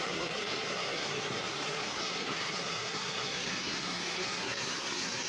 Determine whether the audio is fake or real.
fake